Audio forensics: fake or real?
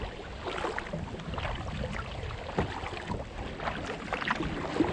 real